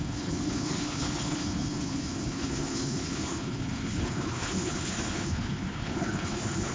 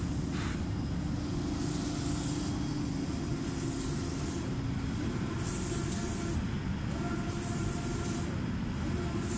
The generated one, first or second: first